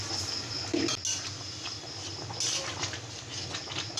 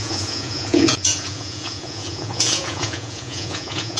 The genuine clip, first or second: first